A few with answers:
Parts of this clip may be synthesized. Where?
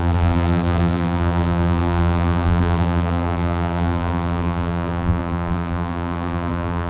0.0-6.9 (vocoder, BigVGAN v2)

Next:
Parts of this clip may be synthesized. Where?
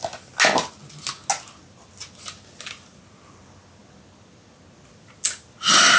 none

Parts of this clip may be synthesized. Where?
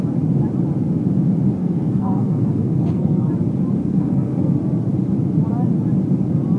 1.6-3.3 (codec, SNAC); 3.8-4.5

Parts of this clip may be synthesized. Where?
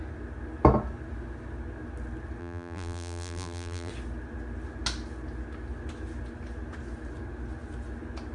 2.4-3.9 (vocoder, BigVGAN v2)